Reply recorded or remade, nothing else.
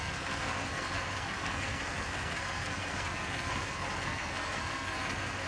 remade